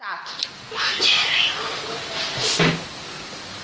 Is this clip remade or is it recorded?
recorded